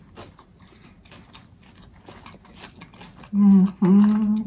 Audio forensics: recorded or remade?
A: recorded